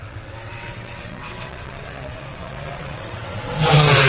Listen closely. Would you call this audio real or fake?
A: fake